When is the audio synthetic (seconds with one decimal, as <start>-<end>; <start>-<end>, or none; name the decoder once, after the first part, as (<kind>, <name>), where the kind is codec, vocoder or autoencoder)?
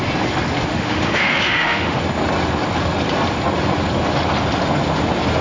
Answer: 0.7-2.0 (autoencoder, DAC-VAE)